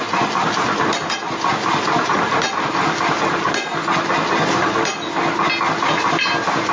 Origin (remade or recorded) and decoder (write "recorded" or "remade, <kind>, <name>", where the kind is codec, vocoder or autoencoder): recorded